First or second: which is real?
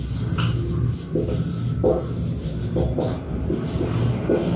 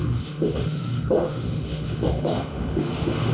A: first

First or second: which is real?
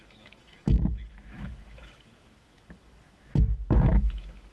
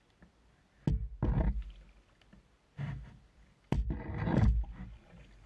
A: second